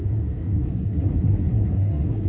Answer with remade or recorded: remade